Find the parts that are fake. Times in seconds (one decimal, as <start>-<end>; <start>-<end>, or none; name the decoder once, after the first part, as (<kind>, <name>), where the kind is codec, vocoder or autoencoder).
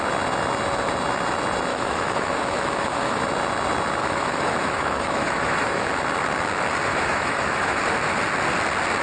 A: 1.7-3.2 (autoencoder, DAC-VAE); 4.0-5.9; 6.9-7.8